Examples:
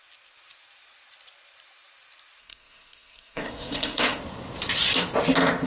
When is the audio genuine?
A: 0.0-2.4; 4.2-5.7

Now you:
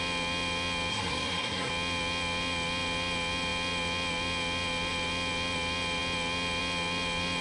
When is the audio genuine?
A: 0.0-0.9; 1.7-7.4

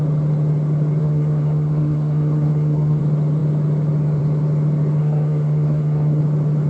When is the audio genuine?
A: 0.0-1.0; 3.0-5.0; 6.2-6.7

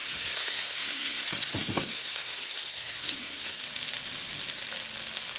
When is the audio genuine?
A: 3.6-5.4

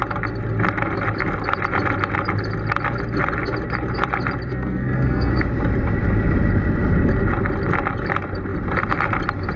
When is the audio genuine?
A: 0.0-4.5; 5.3-9.6

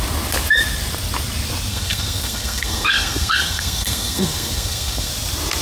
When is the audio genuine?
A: 0.0-1.7; 5.1-5.6

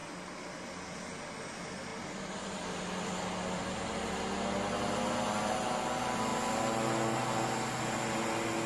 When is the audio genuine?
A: 0.0-8.7

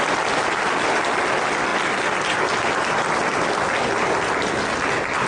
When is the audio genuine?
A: 0.0-5.3